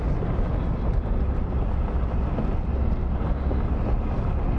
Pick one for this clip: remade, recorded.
recorded